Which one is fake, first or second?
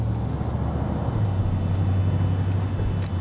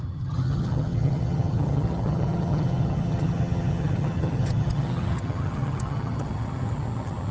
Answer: second